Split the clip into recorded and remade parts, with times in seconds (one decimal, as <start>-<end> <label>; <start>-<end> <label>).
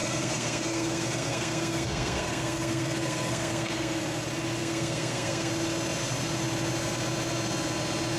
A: 0.0-4.0 remade; 4.0-4.6 recorded; 4.6-5.5 remade; 5.5-8.2 recorded